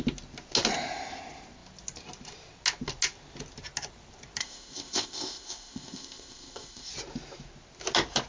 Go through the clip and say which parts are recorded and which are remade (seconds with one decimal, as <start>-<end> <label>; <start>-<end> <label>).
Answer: 0.0-4.4 recorded; 4.4-6.9 remade; 6.9-8.3 recorded